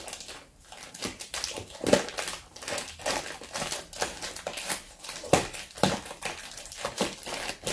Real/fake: real